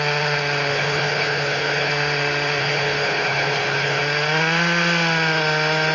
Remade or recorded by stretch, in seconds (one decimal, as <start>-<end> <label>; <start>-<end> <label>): 0.0-0.7 recorded; 0.7-1.9 remade; 1.9-2.6 recorded; 2.6-4.0 remade; 4.0-5.9 recorded